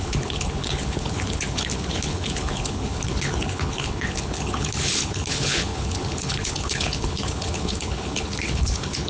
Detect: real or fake fake